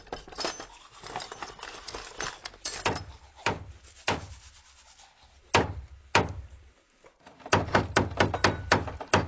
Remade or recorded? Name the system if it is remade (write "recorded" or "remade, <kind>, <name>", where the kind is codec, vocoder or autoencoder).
recorded